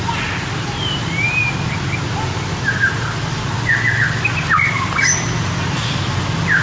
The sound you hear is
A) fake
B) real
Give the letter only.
B